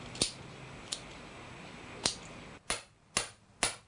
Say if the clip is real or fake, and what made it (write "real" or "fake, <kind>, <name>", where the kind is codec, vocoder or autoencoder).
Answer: real